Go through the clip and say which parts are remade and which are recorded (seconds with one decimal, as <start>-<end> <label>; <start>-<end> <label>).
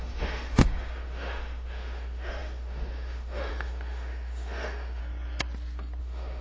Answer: 0.0-5.0 remade; 5.0-6.0 recorded; 6.0-6.4 remade